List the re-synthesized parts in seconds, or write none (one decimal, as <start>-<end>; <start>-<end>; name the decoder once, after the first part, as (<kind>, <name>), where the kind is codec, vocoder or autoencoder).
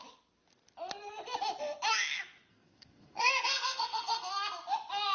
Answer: 2.5-4.3 (codec, SNAC)